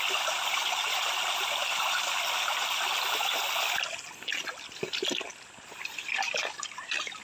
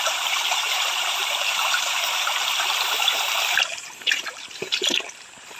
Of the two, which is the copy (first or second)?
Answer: second